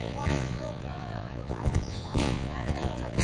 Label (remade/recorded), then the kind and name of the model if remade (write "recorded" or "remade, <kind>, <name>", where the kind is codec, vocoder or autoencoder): remade, vocoder, Vocos